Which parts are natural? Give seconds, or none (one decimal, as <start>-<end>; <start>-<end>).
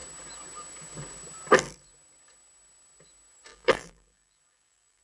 0.0-3.5